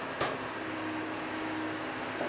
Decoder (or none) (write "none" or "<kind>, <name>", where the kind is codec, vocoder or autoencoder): none